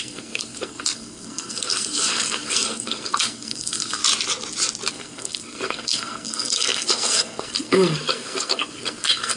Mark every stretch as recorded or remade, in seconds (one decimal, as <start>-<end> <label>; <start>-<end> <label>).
0.0-4.0 remade; 4.0-4.9 recorded; 4.9-9.4 remade

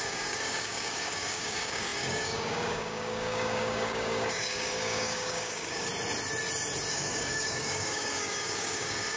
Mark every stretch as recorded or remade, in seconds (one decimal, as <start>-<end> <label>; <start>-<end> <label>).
0.0-5.9 remade; 5.9-6.9 recorded; 6.9-9.2 remade

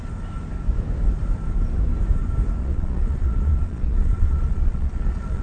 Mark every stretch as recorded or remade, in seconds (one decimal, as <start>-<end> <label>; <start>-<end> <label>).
0.0-2.6 recorded; 2.6-5.4 remade

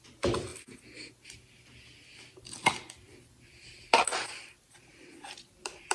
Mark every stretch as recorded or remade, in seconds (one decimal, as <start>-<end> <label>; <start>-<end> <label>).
0.0-0.5 remade; 0.5-4.0 recorded; 4.0-5.9 remade

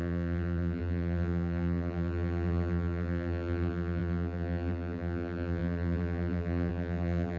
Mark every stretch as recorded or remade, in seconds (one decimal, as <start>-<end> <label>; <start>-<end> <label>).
0.0-7.4 remade

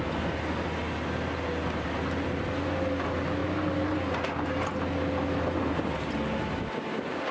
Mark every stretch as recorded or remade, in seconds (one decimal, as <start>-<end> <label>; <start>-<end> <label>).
0.0-7.3 recorded

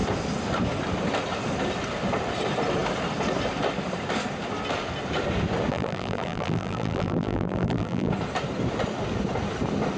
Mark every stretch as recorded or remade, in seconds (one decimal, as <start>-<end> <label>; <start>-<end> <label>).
0.0-5.7 recorded; 5.7-8.1 remade; 8.1-10.0 recorded

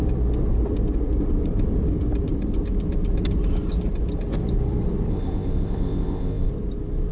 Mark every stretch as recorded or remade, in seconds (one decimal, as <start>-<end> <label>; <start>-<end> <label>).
0.0-5.1 recorded; 5.1-6.5 remade; 6.5-7.1 recorded